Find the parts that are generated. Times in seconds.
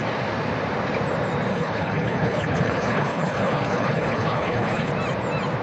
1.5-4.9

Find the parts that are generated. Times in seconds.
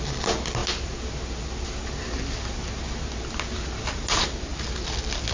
none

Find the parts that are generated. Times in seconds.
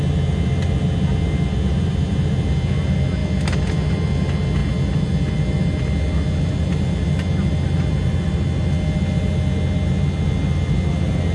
none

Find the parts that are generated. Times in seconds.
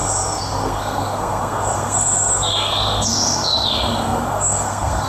0.0-5.1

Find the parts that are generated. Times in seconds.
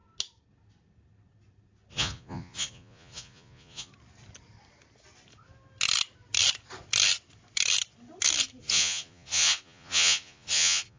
1.9-3.9; 8.6-11.0